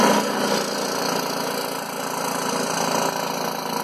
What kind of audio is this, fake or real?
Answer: real